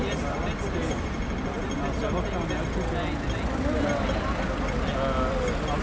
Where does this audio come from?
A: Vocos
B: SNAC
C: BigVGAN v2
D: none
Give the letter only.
D